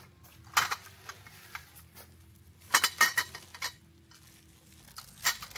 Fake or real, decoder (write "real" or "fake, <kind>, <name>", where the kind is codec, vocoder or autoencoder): real